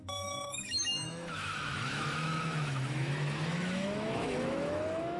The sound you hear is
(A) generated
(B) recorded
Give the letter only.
A